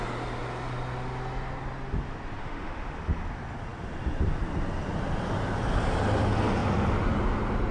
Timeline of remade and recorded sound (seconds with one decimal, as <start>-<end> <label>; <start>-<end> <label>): 0.0-2.4 recorded; 2.4-3.0 remade; 3.0-7.7 recorded